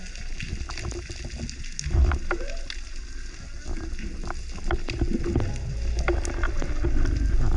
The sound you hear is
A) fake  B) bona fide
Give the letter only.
B